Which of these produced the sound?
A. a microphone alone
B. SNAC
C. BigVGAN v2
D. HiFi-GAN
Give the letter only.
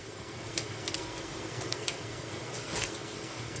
B